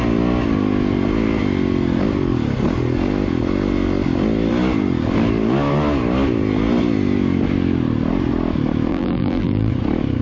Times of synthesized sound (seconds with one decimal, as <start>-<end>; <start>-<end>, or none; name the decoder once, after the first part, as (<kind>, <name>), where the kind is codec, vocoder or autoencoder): 8.9-9.7 (vocoder, BigVGAN v2)